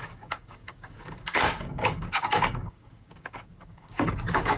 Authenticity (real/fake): fake